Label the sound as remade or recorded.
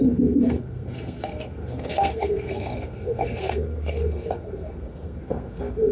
remade